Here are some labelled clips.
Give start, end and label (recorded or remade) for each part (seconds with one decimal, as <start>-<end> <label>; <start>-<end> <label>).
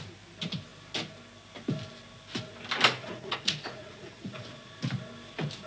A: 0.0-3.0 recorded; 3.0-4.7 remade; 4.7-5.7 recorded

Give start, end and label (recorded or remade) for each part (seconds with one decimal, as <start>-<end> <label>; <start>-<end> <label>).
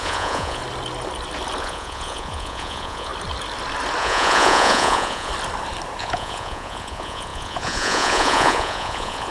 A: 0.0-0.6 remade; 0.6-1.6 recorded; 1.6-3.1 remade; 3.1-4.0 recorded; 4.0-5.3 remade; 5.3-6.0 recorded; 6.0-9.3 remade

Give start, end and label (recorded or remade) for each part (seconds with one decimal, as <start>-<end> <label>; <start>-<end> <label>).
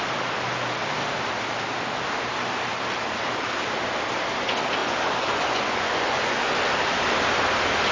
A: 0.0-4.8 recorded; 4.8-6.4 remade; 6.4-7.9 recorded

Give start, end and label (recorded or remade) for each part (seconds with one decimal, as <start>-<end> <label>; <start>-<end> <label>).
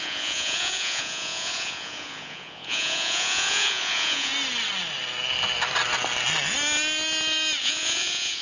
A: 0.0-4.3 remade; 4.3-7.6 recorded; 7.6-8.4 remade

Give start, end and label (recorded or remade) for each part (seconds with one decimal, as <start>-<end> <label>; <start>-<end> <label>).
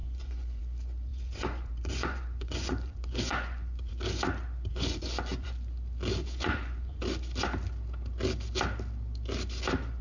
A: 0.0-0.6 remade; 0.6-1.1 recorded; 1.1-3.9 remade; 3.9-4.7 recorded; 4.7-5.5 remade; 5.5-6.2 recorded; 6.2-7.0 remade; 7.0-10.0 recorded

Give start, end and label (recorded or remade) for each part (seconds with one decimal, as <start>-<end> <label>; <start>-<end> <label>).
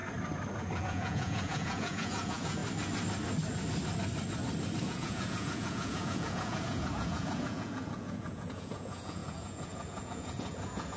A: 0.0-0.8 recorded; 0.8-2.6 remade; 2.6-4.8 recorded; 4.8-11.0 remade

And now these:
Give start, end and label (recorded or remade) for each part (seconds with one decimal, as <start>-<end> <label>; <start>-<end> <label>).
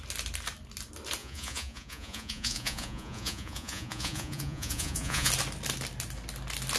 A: 0.0-1.2 recorded; 1.2-5.3 remade; 5.3-6.8 recorded